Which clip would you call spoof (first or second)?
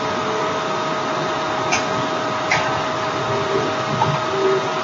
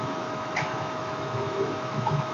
second